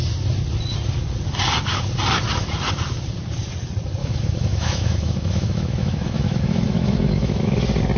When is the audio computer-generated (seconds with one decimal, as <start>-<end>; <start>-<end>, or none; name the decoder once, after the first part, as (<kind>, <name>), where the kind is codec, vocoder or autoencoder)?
4.0-7.6 (autoencoder, DAC-VAE)